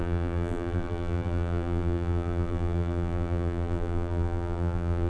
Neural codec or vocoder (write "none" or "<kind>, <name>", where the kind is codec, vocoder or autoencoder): vocoder, BigVGAN v2